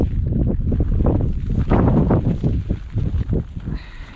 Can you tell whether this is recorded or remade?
recorded